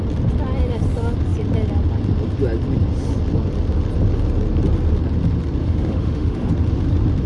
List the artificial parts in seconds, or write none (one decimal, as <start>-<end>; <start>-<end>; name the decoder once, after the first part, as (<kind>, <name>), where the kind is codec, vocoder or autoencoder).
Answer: 5.6-6.5 (autoencoder, DAC-VAE)